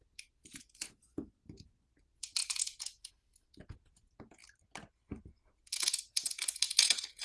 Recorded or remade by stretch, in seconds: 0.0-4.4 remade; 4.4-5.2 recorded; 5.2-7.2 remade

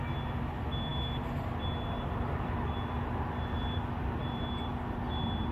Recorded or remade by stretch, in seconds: 0.0-5.5 recorded

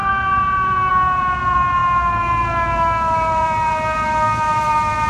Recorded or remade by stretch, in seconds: 0.0-5.1 remade

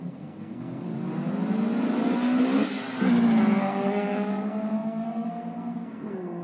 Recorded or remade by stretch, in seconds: 0.0-0.9 remade; 0.9-3.6 recorded; 3.6-6.4 remade

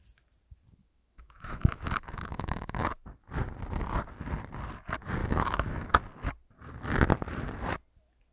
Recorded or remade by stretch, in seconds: 0.0-0.8 recorded; 0.8-2.8 remade; 2.8-5.2 recorded; 5.2-6.0 remade; 6.0-8.3 recorded